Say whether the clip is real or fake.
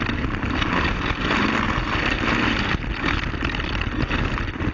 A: real